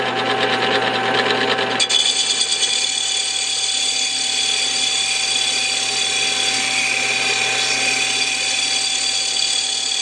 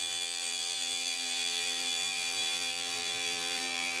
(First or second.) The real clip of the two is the first